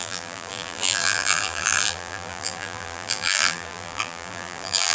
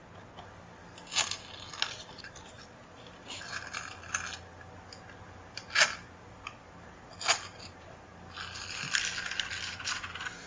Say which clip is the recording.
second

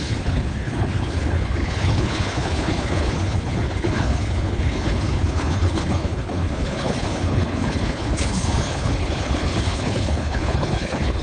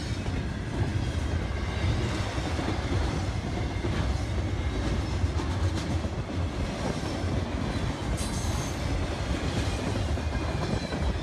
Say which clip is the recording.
second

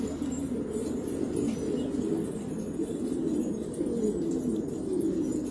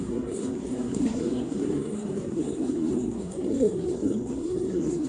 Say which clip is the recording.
first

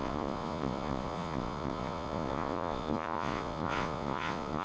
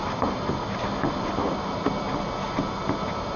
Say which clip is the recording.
second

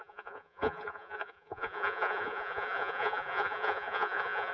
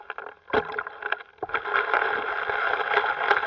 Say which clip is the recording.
second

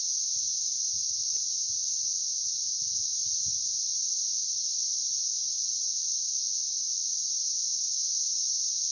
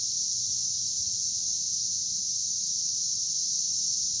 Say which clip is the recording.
second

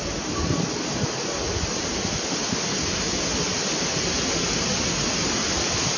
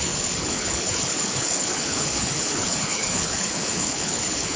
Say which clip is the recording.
first